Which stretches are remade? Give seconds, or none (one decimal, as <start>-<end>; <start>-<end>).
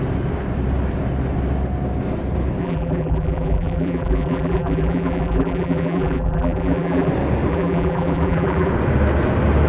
2.6-7.1; 7.5-8.7